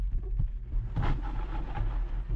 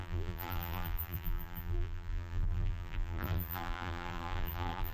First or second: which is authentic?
first